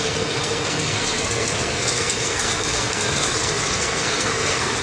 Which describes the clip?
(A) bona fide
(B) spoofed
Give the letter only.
B